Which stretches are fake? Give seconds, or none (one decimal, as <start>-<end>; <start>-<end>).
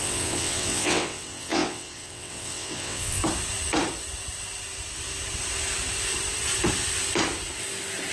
0.0-3.2